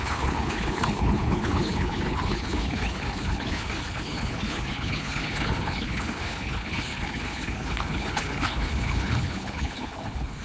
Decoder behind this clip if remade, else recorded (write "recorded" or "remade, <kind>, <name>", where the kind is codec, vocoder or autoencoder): remade, codec, HILCodec